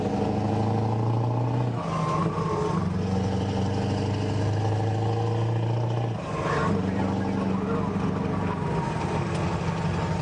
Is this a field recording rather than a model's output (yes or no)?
yes